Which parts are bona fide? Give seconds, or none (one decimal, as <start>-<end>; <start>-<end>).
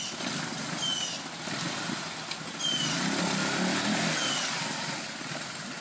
0.0-5.8